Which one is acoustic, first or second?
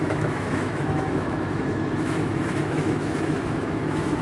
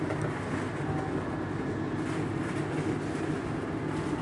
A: second